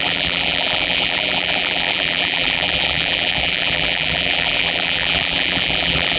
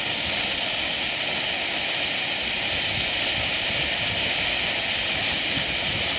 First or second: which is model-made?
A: first